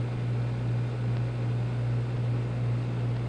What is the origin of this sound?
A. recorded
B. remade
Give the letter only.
A